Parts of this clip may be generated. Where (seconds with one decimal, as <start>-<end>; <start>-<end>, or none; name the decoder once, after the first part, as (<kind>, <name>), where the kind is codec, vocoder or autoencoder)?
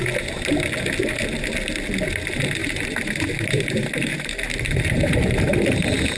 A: 2.6-5.3 (vocoder, BigVGAN v2)